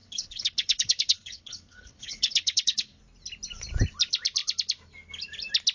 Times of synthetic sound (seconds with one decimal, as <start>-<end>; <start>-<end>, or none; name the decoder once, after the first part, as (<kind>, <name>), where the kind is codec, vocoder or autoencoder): 0.0-3.0 (codec, HILCodec)